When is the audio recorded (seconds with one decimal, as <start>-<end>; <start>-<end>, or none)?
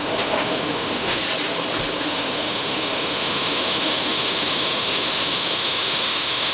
1.2-2.0